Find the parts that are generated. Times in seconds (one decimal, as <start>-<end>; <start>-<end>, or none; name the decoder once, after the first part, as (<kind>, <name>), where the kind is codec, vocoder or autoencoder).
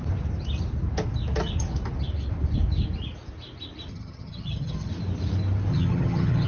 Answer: 3.9-4.9 (vocoder, HiFi-GAN); 5.7-6.5